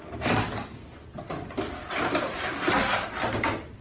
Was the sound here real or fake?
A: real